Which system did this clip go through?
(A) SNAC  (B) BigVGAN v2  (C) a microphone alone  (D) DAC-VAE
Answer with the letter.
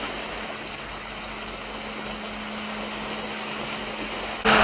C